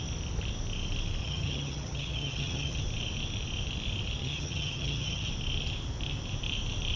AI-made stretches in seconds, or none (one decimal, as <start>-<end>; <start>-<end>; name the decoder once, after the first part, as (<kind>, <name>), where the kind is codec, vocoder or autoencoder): 1.2-2.8 (vocoder, HiFi-GAN); 4.2-5.3